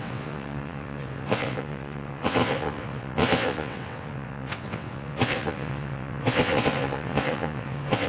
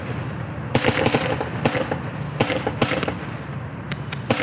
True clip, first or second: second